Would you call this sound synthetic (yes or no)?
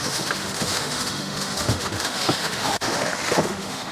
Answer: yes